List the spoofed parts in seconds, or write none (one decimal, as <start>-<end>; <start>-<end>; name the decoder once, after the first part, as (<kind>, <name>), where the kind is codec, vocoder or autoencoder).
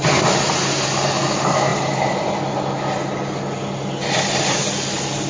none